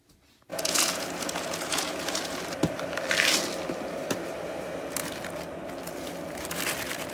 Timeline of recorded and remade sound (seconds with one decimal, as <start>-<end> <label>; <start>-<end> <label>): 0.0-0.5 recorded; 0.5-2.4 remade; 2.4-7.1 recorded